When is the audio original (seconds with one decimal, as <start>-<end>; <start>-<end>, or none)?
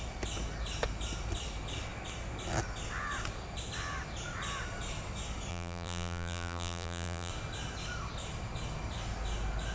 0.0-5.5; 7.3-9.7